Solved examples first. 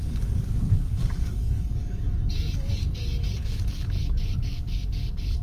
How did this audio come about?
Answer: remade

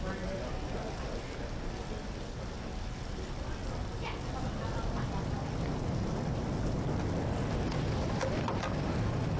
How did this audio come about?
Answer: recorded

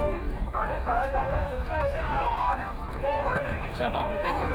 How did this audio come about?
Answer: remade